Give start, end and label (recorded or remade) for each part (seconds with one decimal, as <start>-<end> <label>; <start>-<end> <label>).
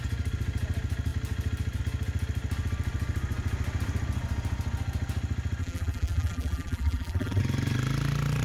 0.0-5.6 recorded; 5.6-7.4 remade; 7.4-8.4 recorded